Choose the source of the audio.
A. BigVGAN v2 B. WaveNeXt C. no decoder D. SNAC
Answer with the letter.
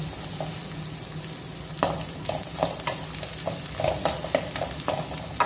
C